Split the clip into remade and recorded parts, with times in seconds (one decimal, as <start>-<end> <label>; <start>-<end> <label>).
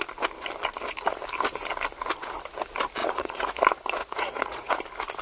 0.0-3.0 recorded; 3.0-3.6 remade; 3.6-4.0 recorded; 4.0-4.8 remade; 4.8-5.2 recorded